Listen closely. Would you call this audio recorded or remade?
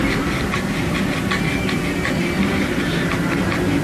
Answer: recorded